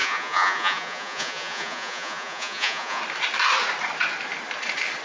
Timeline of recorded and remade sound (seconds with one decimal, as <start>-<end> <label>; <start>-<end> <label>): 0.0-3.0 remade; 3.0-5.0 recorded